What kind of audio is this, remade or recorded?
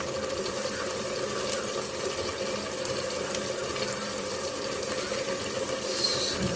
recorded